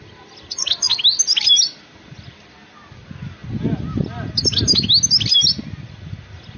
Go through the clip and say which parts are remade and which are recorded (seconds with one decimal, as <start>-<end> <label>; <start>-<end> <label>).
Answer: 0.0-6.6 recorded